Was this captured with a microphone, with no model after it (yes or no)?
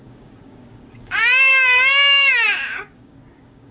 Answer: no